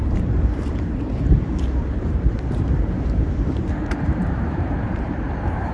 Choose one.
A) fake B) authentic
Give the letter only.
A